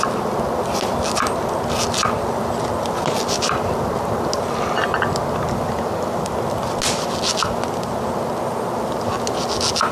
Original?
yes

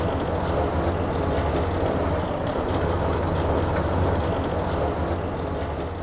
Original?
yes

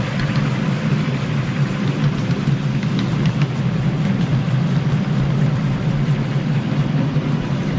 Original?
yes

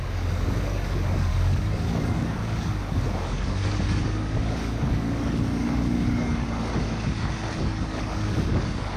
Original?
no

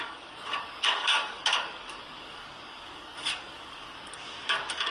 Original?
no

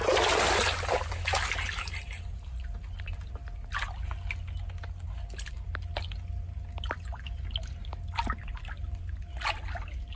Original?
yes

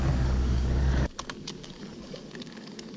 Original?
no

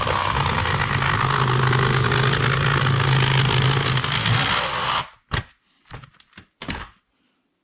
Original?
yes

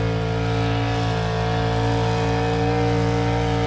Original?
yes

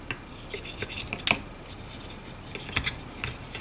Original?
yes